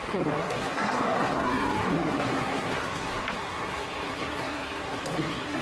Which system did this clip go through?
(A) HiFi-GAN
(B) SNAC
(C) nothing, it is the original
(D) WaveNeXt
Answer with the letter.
B